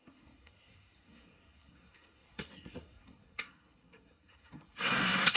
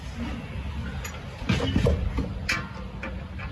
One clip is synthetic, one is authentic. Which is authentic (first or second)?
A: second